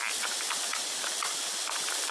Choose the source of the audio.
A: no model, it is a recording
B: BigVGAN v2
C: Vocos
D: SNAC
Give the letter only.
A